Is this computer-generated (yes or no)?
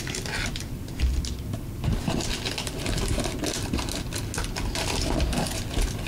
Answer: no